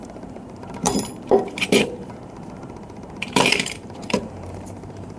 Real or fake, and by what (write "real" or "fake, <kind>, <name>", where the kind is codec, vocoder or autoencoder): fake, vocoder, BigVGAN v2